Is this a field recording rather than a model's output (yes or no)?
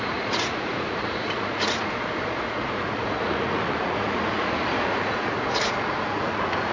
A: no